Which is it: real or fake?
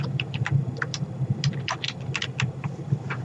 real